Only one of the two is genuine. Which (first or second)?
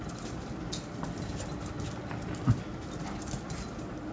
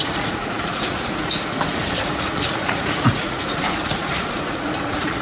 first